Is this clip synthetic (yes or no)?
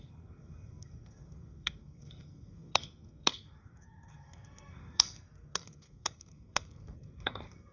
yes